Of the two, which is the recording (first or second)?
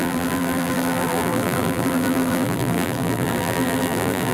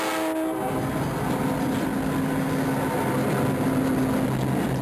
second